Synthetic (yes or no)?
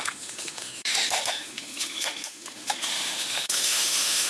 yes